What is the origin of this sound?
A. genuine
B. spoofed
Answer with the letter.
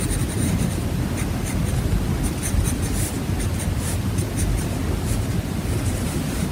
A